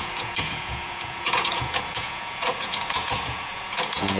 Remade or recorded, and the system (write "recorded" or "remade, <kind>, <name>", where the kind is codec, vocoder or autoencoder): remade, vocoder, Vocos